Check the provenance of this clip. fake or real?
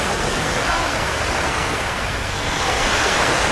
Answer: fake